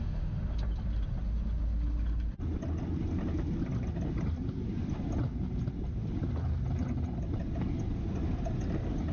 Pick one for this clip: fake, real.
real